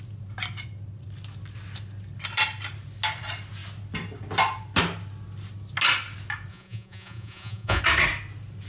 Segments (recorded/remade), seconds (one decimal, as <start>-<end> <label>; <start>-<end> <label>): 0.0-6.5 recorded; 6.5-7.8 remade; 7.8-8.7 recorded